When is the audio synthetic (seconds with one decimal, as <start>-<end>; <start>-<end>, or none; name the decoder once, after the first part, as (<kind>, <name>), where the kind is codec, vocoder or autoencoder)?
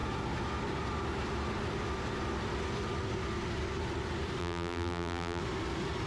4.4-5.4 (vocoder, BigVGAN v2)